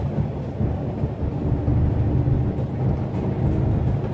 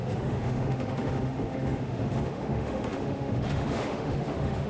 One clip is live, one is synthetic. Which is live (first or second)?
first